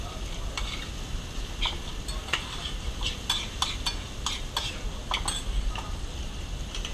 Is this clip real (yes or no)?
yes